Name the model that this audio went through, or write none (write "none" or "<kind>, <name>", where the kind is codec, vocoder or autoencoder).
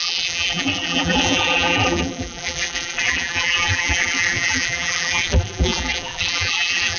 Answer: vocoder, BigVGAN v2